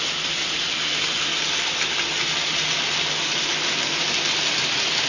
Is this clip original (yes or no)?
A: yes